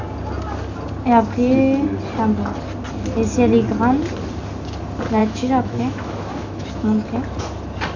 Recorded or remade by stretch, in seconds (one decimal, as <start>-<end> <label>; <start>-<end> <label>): 0.0-5.2 recorded; 5.2-7.1 remade; 7.1-8.0 recorded